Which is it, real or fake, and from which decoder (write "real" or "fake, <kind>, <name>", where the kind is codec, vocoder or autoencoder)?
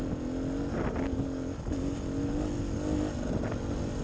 real